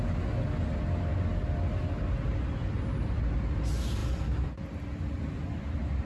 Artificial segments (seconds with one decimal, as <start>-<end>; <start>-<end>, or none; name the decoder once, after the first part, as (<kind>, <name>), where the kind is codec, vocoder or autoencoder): none